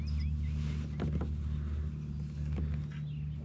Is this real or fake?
real